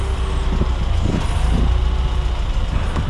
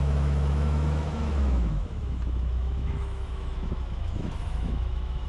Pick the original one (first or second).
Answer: first